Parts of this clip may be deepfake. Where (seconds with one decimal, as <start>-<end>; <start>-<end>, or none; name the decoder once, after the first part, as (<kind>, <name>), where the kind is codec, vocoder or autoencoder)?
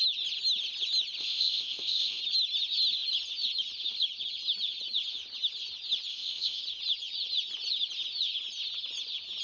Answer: 1.2-2.2 (codec, ZipCodec); 6.1-6.6